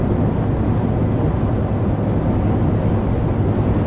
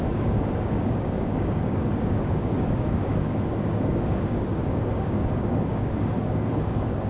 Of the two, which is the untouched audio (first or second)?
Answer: first